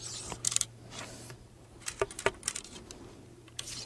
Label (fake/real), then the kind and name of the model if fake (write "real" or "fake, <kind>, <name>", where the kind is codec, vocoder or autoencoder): fake, vocoder, BigVGAN v2